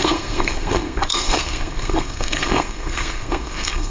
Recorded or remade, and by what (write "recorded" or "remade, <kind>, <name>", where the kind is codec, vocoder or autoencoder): remade, codec, SNAC